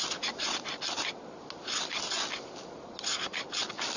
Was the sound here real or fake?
real